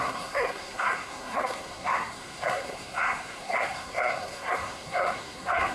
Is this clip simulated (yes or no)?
yes